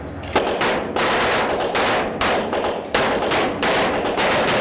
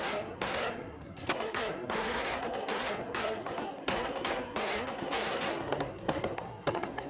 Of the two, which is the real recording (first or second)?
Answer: first